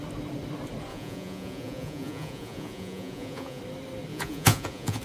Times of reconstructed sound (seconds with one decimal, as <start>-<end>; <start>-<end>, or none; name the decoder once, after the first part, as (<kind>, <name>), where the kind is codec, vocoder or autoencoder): 0.9-3.6 (vocoder, Vocos); 4.1-5.0